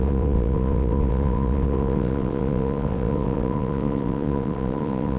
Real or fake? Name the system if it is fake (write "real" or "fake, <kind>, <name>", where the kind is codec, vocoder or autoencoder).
fake, vocoder, WaveNeXt